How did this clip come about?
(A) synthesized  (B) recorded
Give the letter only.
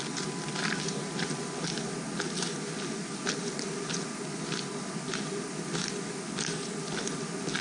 B